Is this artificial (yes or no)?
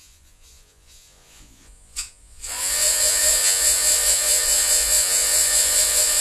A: yes